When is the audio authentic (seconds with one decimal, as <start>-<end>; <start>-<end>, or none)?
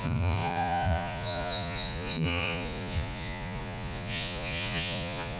none